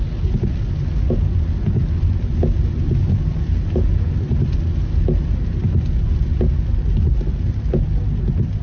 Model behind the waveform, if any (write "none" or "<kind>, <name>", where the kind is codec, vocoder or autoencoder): none